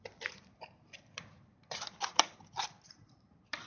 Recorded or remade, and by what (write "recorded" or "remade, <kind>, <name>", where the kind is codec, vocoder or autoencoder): remade, vocoder, BigVGAN v2